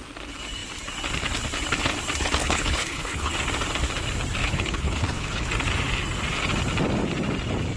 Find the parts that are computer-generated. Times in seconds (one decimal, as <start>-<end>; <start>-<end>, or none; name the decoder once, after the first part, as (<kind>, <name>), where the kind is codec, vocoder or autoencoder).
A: 2.4-3.3 (codec, HILCodec); 4.4-5.5